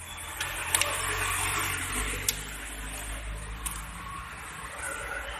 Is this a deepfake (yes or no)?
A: no